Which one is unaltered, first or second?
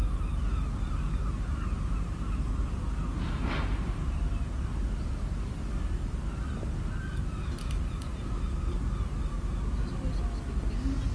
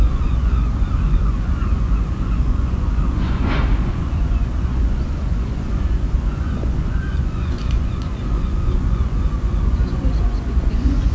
first